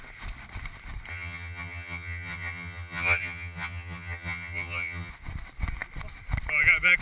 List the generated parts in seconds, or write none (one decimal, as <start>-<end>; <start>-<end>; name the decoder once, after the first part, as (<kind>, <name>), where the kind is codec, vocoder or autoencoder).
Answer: 1.1-5.1 (vocoder, HiFi-GAN)